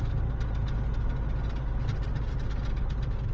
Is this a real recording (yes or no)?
yes